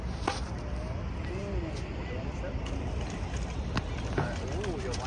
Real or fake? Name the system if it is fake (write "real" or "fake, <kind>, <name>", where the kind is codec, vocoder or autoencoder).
real